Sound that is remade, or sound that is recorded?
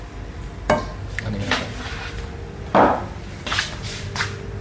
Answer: recorded